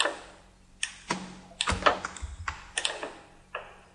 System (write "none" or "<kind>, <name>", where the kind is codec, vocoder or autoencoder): none